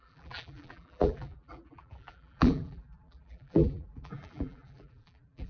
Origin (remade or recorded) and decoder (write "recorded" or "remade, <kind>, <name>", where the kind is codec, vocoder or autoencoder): remade, vocoder, BigVGAN v2